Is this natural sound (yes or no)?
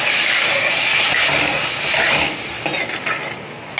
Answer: yes